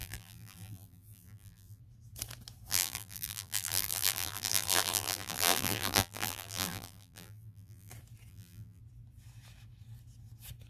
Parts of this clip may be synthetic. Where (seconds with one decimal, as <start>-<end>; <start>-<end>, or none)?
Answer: 0.0-1.8; 2.7-7.9; 8.3-8.8